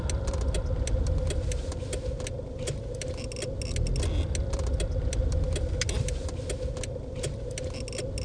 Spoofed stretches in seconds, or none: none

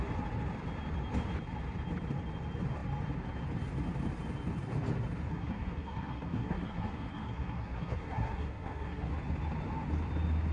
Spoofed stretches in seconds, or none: 5.3-9.1

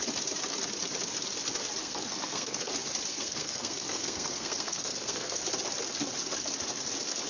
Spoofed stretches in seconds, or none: 1.8-2.7; 3.1-5.4

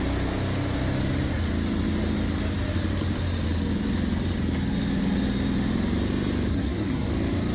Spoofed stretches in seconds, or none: 6.5-7.1